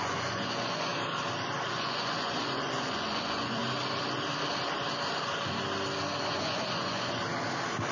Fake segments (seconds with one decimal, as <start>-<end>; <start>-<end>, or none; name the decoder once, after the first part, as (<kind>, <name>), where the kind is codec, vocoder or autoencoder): 0.0-0.9 (vocoder, Vocos); 1.7-3.6; 6.2-7.2